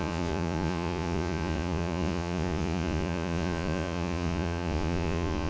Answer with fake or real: fake